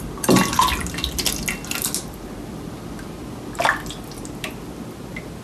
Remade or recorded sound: recorded